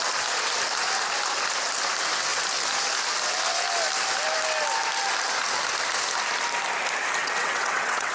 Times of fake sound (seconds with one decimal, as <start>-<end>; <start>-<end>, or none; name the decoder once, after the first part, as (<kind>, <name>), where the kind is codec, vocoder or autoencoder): 7.2-8.1 (vocoder, WaveNeXt)